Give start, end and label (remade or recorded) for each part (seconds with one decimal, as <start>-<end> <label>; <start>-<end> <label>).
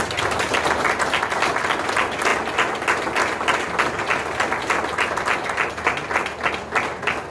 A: 0.0-7.3 recorded